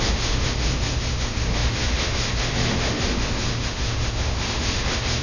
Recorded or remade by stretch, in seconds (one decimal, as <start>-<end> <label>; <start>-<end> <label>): 0.0-5.2 remade